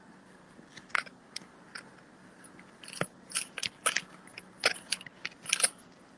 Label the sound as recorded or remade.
recorded